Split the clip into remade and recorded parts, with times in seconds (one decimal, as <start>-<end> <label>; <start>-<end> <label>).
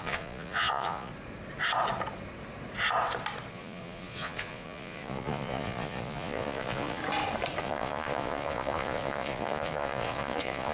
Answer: 0.0-1.1 remade; 1.1-3.5 recorded; 3.5-7.0 remade; 7.0-7.6 recorded; 7.6-10.7 remade